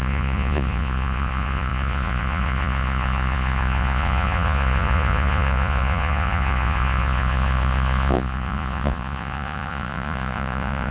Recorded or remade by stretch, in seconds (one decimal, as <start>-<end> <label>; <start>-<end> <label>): 0.0-10.9 remade